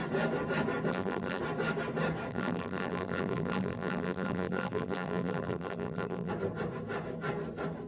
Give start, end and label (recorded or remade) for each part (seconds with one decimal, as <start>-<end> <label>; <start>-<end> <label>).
0.0-0.9 recorded; 0.9-1.4 remade; 1.4-2.3 recorded; 2.3-6.3 remade; 6.3-7.9 recorded